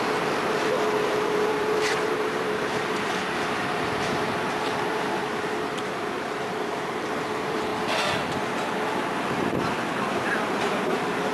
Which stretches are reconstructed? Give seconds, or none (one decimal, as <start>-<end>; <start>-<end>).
0.0-7.7; 10.1-11.3

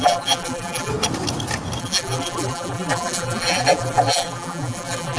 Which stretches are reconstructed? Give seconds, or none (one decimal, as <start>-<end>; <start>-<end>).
0.0-0.9; 1.8-5.2

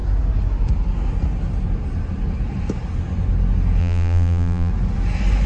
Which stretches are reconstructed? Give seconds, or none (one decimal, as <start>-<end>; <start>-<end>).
3.8-4.7

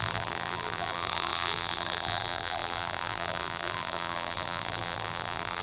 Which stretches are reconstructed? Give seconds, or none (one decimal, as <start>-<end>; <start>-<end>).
0.0-5.6